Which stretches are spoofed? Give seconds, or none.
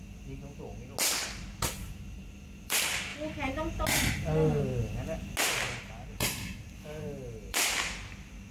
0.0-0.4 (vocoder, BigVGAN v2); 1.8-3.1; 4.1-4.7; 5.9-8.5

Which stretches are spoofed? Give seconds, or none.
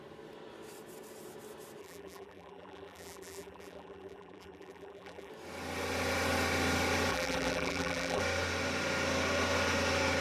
1.8-5.3 (vocoder, BigVGAN v2); 7.1-8.2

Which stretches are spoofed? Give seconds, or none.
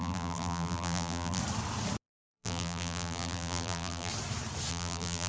0.0-1.4 (vocoder, BigVGAN v2); 2.0-4.1; 4.7-5.3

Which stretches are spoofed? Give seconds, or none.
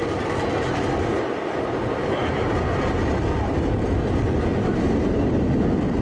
0.0-4.5 (vocoder, BigVGAN v2); 5.6-6.0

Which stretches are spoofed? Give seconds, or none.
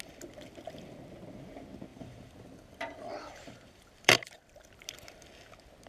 1.9-4.7 (vocoder, BigVGAN v2)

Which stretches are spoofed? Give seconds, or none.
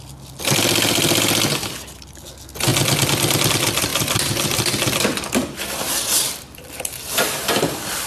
3.9-8.1 (vocoder, BigVGAN v2)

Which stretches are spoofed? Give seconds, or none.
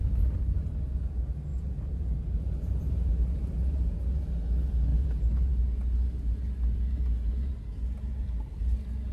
1.5-4.0 (vocoder, BigVGAN v2); 4.9-5.5